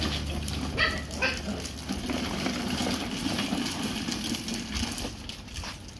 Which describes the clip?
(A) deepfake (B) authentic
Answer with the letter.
B